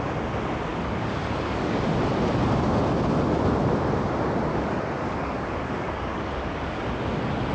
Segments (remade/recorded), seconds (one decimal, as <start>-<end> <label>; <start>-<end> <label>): 0.0-0.7 recorded; 0.7-1.8 remade; 1.8-4.5 recorded; 4.5-7.0 remade; 7.0-7.5 recorded